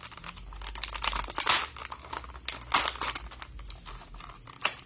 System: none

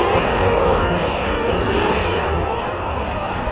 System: codec, DAC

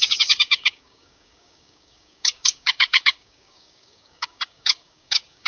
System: codec, DAC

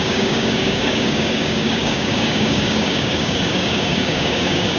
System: codec, DAC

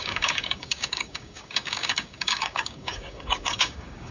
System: codec, DAC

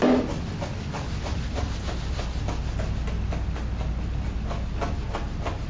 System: none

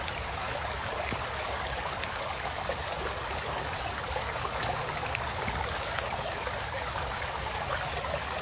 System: codec, DAC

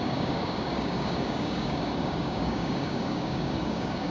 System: codec, DAC